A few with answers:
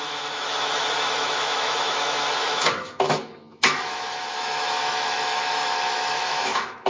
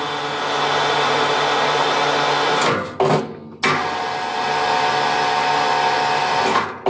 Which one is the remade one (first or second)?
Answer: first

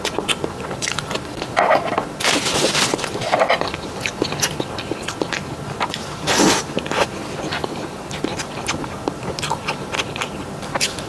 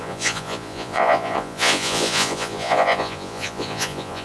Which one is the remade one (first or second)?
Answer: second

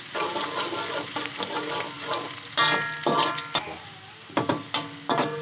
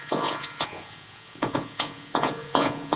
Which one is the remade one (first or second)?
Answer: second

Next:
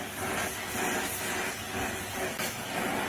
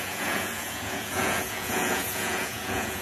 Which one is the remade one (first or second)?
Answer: second